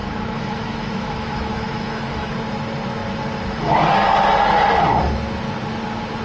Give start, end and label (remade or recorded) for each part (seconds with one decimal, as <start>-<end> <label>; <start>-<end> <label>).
0.0-2.3 remade; 2.3-6.2 recorded